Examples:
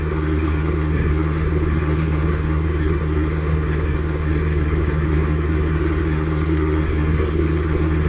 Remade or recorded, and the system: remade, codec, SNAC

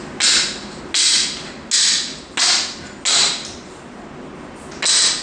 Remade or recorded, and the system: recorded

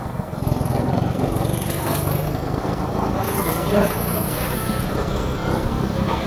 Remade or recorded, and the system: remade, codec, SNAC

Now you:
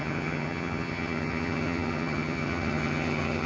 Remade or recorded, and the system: remade, vocoder, HiFi-GAN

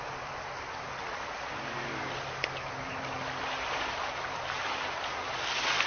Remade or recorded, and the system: recorded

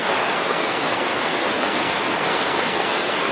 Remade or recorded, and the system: remade, codec, SNAC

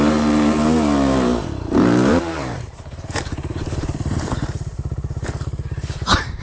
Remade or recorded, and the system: remade, vocoder, BigVGAN v2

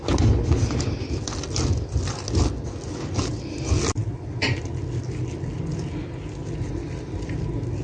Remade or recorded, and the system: recorded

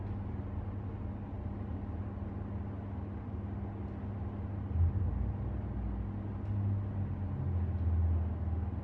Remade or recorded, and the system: recorded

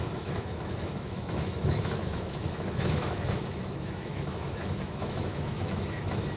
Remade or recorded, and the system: remade, autoencoder, DAC-VAE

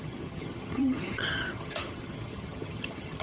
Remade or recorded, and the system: remade, vocoder, HiFi-GAN